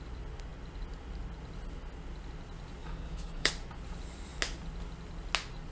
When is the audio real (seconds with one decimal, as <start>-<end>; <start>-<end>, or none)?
0.0-2.8; 3.5-5.7